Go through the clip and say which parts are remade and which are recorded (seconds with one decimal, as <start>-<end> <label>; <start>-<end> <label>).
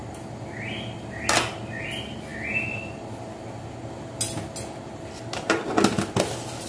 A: 0.0-6.7 recorded